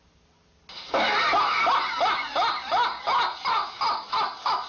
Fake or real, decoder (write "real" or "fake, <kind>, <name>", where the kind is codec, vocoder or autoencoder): real